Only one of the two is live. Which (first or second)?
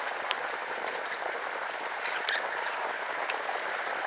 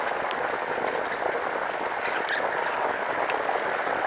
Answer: second